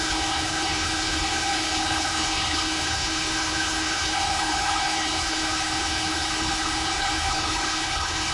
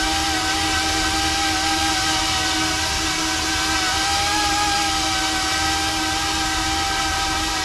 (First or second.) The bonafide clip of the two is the second